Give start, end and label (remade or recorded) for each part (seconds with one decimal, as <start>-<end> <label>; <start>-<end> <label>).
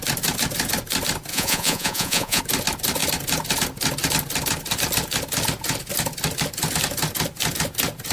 0.0-1.3 recorded; 1.3-2.4 remade; 2.4-8.1 recorded